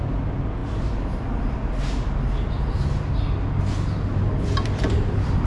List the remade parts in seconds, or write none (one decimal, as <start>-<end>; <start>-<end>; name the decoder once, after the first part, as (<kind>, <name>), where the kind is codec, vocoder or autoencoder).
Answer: 4.2-5.5 (vocoder, BigVGAN v2)